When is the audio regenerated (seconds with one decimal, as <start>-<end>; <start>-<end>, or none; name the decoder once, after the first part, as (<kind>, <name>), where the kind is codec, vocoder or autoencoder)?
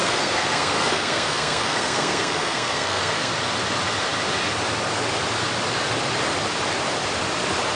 0.0-3.3 (codec, SNAC)